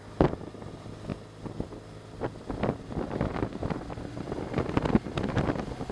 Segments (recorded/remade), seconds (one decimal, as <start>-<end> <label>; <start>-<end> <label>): 0.0-5.9 recorded